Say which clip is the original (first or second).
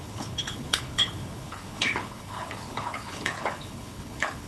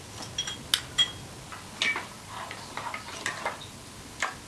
second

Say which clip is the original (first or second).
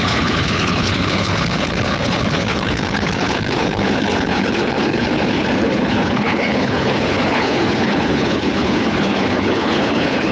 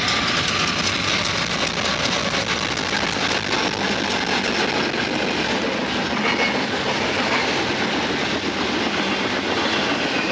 second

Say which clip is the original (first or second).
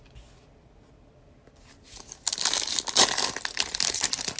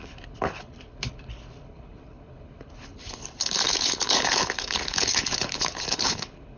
first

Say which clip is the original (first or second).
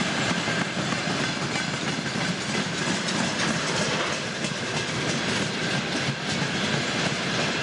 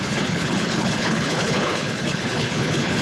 first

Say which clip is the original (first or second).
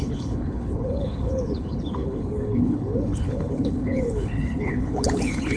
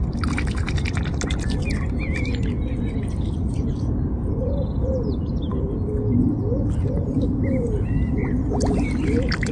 second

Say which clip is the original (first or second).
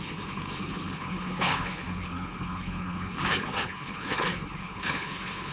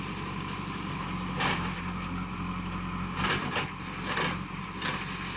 second